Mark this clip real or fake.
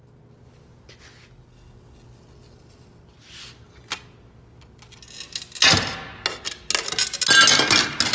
real